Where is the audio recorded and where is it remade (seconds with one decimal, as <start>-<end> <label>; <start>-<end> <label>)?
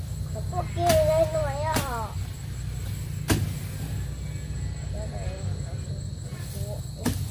0.0-1.3 recorded; 1.3-3.7 remade; 3.7-6.3 recorded; 6.3-7.3 remade